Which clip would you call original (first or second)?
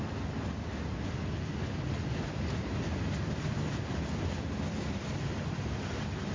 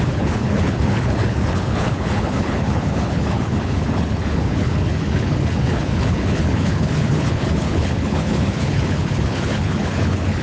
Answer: first